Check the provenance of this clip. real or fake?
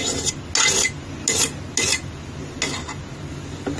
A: real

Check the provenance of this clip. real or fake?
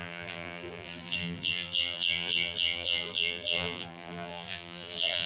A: fake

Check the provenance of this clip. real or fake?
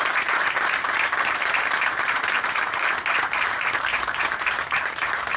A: fake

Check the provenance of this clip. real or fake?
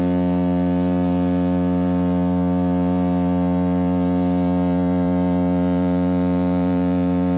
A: fake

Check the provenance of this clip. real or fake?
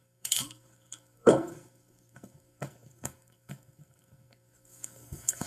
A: fake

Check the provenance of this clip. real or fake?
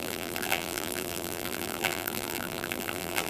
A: fake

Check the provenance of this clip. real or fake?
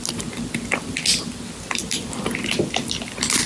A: real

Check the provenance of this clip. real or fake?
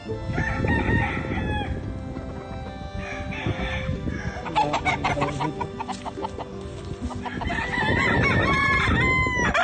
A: real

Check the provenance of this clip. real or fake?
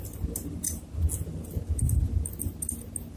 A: real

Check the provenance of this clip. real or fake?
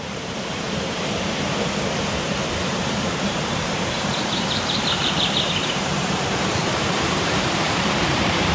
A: fake